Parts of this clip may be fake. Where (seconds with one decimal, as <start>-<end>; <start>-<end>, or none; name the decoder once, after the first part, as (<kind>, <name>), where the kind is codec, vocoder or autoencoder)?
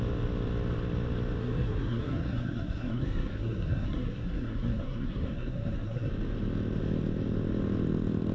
1.4-6.1 (codec, SNAC)